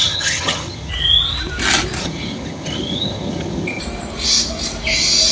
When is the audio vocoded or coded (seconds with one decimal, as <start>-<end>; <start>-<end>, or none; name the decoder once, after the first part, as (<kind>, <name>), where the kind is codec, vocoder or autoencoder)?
0.0-0.9 (vocoder, HiFi-GAN); 2.0-3.8